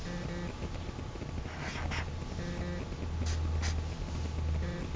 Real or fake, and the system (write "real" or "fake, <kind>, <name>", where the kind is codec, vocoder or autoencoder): real